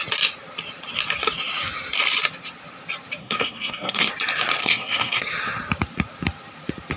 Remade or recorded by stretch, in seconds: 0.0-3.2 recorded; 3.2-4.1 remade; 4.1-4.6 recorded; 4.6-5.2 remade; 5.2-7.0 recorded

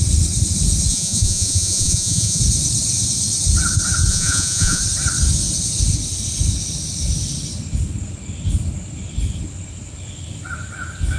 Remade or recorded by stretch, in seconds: 0.0-0.9 recorded; 0.9-2.4 remade; 2.4-4.1 recorded; 4.1-4.8 remade; 4.8-11.2 recorded

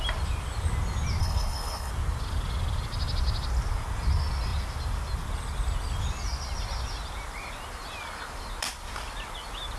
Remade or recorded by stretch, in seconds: 0.0-1.2 recorded; 1.2-1.9 remade; 1.9-9.8 recorded

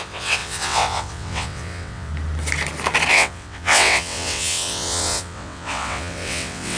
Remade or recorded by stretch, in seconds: 0.0-2.1 remade; 2.1-3.1 recorded; 3.1-6.8 remade